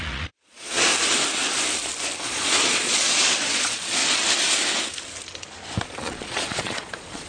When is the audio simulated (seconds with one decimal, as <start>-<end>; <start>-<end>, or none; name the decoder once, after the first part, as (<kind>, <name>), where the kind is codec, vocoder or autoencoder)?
0.0-0.9 (vocoder, Vocos); 2.2-4.0; 5.8-7.3